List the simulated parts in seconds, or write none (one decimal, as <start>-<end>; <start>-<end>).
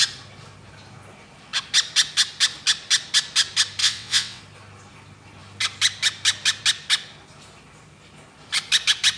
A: 3.8-4.4